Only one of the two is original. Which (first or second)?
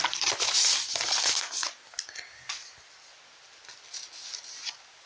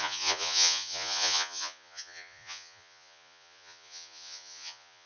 first